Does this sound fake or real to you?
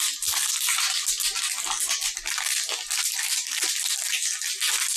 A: real